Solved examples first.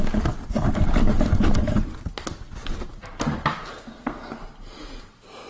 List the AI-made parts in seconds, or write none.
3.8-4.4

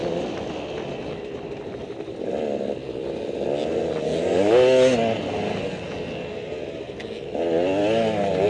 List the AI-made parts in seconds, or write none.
none

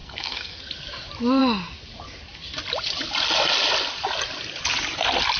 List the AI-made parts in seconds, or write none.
0.0-0.6

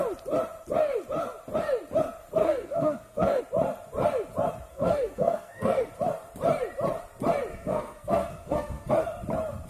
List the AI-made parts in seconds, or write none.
2.4-3.4; 4.7-5.9; 7.5-8.9

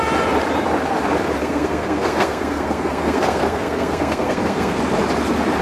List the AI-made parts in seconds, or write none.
1.4-4.8